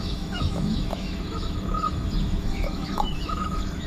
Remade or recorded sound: remade